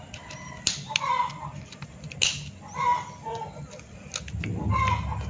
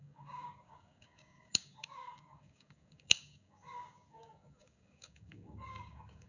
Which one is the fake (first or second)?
second